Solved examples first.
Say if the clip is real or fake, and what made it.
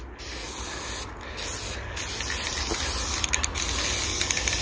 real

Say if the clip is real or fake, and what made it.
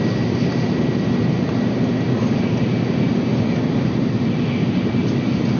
real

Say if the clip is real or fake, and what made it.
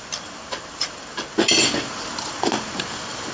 real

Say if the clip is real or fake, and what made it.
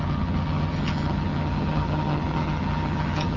fake, vocoder, HiFi-GAN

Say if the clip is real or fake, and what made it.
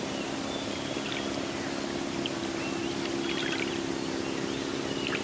real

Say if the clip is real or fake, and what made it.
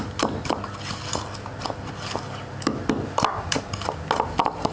real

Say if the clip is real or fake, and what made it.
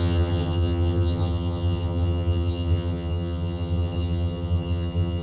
fake, vocoder, HiFi-GAN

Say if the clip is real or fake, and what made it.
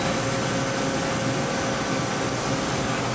real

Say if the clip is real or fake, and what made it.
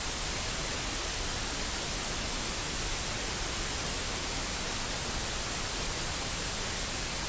real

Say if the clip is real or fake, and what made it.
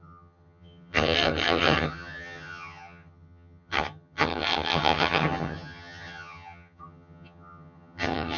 fake, vocoder, HiFi-GAN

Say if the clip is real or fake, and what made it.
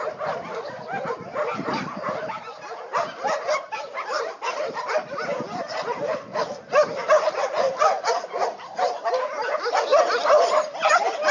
real